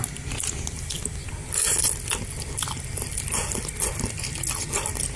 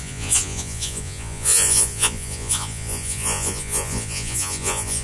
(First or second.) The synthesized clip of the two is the second